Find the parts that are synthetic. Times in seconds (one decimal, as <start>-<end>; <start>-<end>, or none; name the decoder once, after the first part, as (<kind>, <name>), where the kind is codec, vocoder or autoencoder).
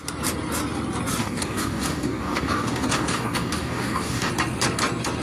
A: 1.2-4.3 (codec, DAC)